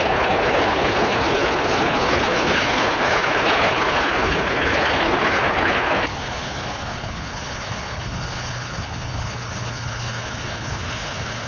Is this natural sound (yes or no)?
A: no